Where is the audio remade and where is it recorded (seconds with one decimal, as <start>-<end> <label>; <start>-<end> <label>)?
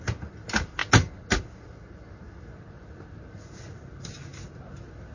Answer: 0.0-5.1 recorded